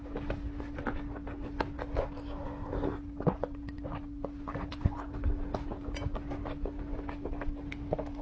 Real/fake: real